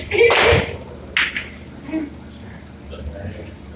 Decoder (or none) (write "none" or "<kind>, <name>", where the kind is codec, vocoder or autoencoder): none